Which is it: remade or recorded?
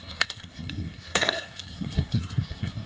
remade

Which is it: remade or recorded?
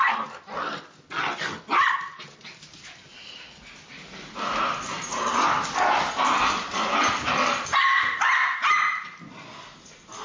recorded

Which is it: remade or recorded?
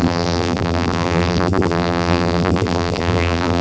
remade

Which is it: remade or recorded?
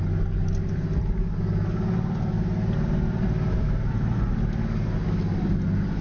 recorded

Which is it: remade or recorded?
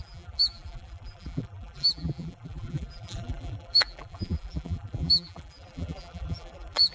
remade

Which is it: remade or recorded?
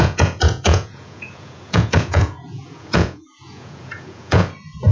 remade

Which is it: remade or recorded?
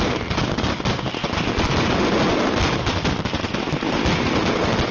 recorded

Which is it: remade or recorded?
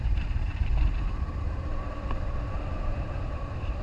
remade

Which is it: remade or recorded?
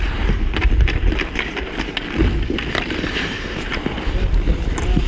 recorded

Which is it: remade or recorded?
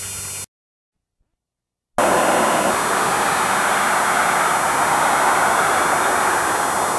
recorded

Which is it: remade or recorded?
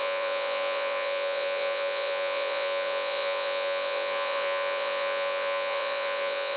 remade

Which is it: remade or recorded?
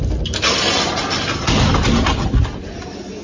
recorded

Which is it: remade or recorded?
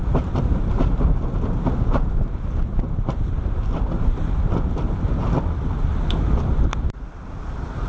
recorded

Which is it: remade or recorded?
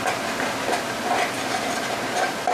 recorded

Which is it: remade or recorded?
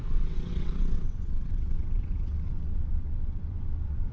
remade